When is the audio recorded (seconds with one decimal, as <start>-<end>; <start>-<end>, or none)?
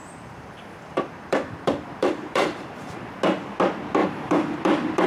3.1-4.0